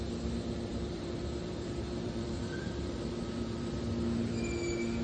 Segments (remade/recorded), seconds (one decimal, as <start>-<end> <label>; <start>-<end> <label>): 0.0-0.7 recorded; 0.7-3.7 remade; 3.7-5.0 recorded